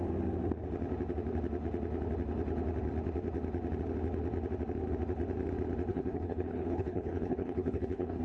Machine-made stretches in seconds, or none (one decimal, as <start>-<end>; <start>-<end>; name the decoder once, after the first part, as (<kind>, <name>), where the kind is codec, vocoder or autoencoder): 5.9-8.2 (codec, HILCodec)